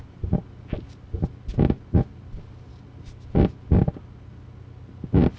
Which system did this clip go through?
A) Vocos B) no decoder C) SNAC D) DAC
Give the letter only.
B